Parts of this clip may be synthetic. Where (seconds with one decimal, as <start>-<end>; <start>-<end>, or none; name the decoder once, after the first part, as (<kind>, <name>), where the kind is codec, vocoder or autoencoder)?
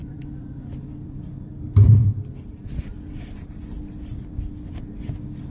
0.0-1.1 (vocoder, BigVGAN v2)